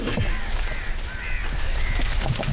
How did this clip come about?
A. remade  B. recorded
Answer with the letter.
B